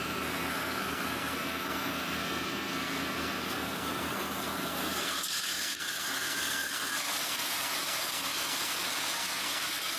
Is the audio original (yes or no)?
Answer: no